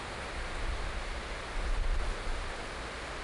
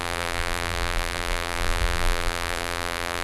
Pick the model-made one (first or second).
second